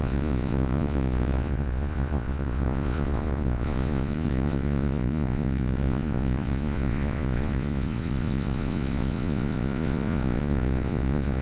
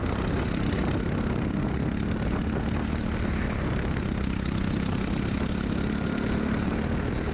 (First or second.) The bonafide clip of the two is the second